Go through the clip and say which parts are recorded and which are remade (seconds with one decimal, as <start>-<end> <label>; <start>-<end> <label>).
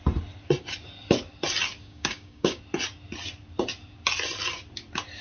0.0-1.8 recorded; 1.8-2.6 remade; 2.6-5.2 recorded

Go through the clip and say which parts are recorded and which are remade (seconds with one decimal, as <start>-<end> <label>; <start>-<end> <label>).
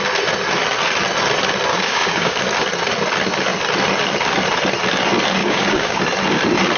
0.0-1.7 recorded; 1.7-2.4 remade; 2.4-5.4 recorded; 5.4-6.0 remade; 6.0-6.8 recorded